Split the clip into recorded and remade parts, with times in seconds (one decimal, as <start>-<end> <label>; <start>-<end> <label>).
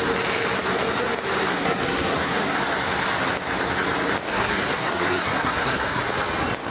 0.0-1.5 recorded; 1.5-2.6 remade; 2.6-4.3 recorded; 4.3-6.0 remade; 6.0-6.7 recorded